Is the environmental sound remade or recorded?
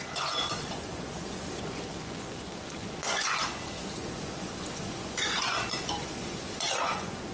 remade